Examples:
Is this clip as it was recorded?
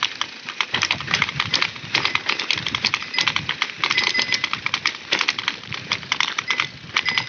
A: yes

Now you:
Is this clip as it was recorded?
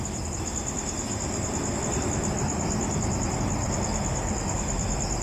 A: yes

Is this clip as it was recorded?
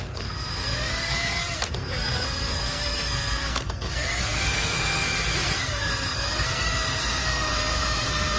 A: no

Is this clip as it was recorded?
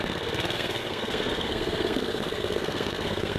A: no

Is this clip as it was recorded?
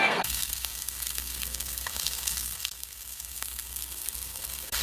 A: no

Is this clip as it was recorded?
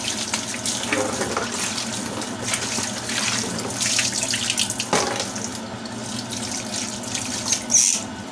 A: yes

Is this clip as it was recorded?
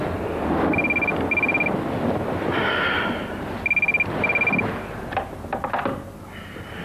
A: yes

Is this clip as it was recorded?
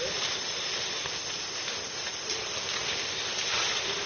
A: yes